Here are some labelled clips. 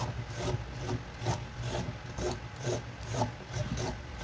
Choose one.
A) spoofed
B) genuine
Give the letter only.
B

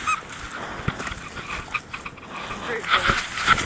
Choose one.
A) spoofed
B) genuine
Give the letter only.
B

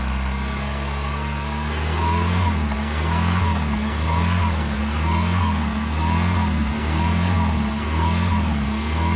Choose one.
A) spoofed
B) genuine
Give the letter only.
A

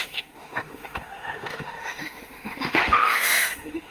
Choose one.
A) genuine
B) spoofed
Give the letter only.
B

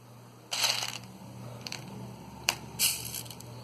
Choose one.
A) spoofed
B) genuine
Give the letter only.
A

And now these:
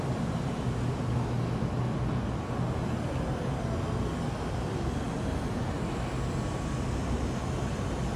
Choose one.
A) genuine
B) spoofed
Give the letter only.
A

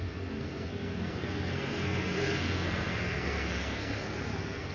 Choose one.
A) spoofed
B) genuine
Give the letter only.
A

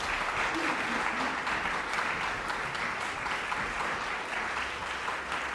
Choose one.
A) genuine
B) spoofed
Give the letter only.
A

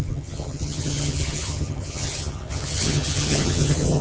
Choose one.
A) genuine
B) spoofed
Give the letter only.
B